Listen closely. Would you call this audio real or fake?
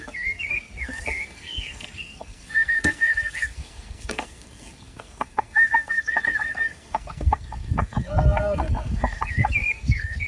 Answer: fake